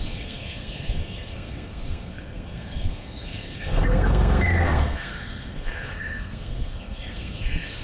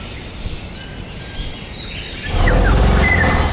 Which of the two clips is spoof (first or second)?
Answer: first